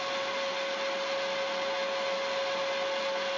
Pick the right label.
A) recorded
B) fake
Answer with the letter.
A